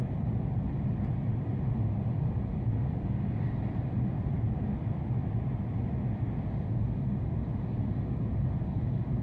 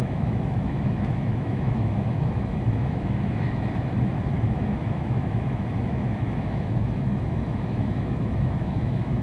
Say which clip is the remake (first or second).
second